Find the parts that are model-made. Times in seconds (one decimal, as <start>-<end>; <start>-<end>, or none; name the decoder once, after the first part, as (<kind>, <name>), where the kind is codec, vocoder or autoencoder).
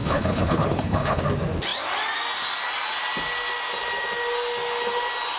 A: 0.0-1.2 (codec, HILCodec)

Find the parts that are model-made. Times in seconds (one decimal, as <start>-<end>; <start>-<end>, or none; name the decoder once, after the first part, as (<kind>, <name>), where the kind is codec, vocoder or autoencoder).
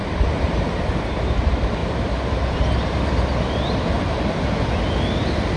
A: 0.0-0.7 (vocoder, BigVGAN v2); 1.8-4.3